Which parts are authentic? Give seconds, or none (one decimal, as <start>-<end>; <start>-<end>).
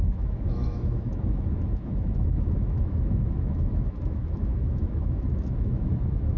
none